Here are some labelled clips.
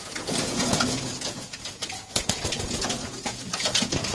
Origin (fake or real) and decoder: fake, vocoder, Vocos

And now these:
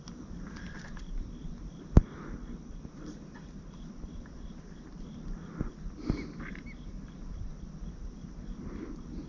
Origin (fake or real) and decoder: real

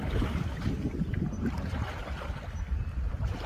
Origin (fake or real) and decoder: real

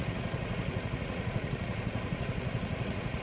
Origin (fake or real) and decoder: fake, vocoder, Vocos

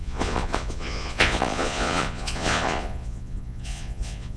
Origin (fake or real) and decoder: fake, vocoder, Vocos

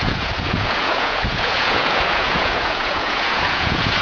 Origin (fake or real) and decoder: fake, vocoder, Vocos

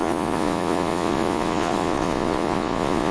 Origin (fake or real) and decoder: fake, vocoder, Vocos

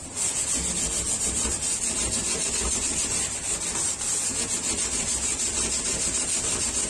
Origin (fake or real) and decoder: real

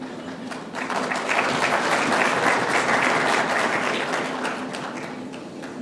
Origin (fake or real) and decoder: real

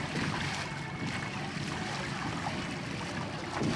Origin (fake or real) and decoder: real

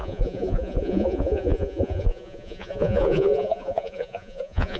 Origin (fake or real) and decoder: fake, vocoder, Vocos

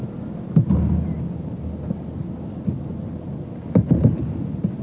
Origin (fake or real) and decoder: real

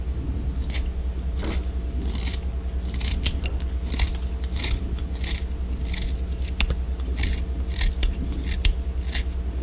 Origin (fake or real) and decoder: real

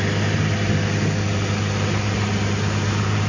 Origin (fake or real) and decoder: real